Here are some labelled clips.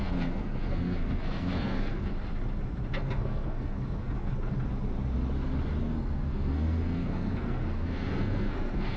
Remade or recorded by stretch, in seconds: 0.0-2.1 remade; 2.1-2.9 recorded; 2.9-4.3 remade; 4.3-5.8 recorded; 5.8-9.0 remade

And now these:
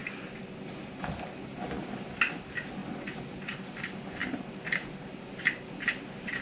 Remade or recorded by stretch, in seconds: 0.0-6.4 recorded

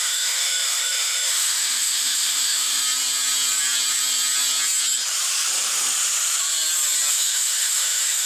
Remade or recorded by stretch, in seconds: 0.0-2.8 remade; 2.8-7.1 recorded; 7.1-8.3 remade

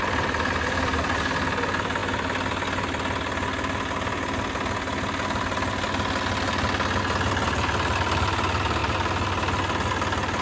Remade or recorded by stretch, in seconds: 0.0-10.4 recorded